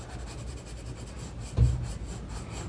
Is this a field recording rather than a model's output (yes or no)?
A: yes